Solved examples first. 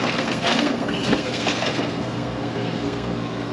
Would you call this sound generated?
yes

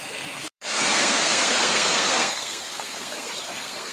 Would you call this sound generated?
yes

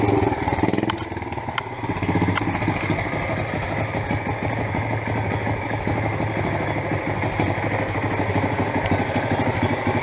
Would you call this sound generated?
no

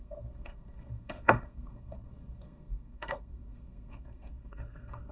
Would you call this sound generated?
yes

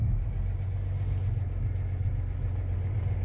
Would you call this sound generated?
no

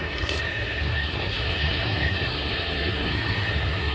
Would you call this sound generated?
yes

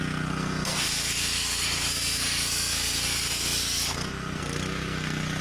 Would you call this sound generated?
yes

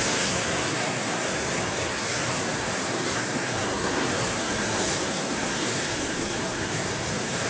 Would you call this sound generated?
yes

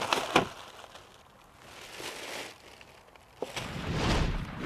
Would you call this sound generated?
no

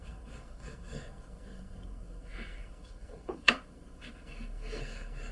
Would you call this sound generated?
yes